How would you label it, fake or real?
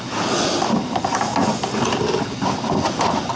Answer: real